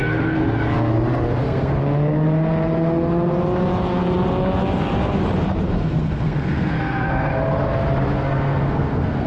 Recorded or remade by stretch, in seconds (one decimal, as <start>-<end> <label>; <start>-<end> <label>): 0.0-0.4 remade; 0.4-1.4 recorded; 1.4-1.8 remade; 1.8-5.7 recorded; 5.7-7.3 remade; 7.3-8.1 recorded; 8.1-9.3 remade